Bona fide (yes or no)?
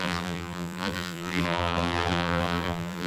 no